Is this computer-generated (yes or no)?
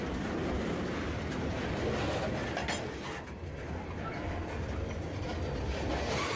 no